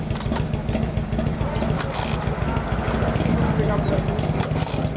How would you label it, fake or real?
real